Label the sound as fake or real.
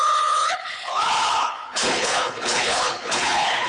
fake